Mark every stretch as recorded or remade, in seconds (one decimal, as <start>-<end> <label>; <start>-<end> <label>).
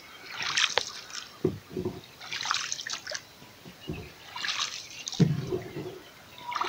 0.0-1.7 recorded; 1.7-5.5 remade; 5.5-6.7 recorded